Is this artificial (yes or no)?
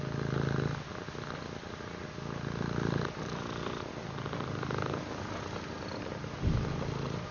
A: no